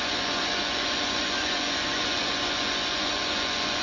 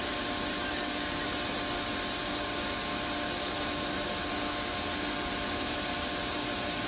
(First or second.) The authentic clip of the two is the second